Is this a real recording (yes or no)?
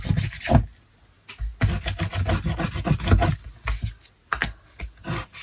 yes